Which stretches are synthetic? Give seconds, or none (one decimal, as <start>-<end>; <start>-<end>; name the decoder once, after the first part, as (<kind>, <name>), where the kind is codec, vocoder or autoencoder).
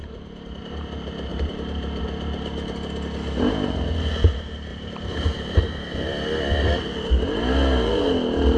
1.3-2.0 (vocoder, BigVGAN v2); 4.7-5.6